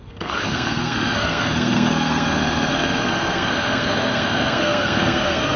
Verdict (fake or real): fake